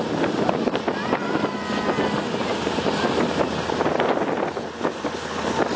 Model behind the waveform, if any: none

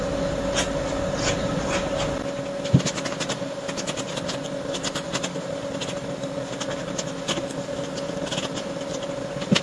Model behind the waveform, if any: none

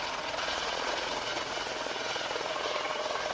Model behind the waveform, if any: vocoder, Vocos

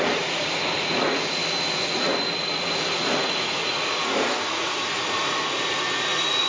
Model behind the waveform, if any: vocoder, Vocos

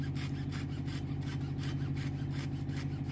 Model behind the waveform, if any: none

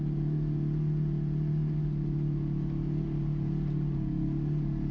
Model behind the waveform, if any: none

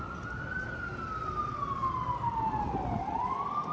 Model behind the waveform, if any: none